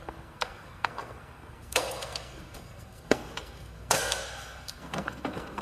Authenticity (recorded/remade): remade